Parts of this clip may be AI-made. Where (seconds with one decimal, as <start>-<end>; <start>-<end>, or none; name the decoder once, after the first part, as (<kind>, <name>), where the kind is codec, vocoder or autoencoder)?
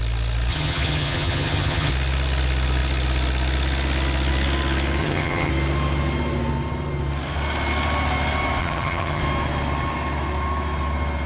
0.5-1.9 (vocoder, HiFi-GAN); 5.0-5.5; 8.6-9.2